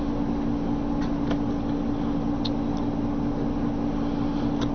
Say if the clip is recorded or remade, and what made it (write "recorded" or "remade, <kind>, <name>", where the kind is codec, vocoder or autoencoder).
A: recorded